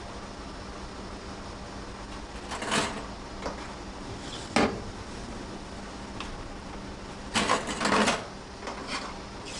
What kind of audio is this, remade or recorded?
recorded